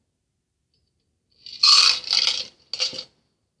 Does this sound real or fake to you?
real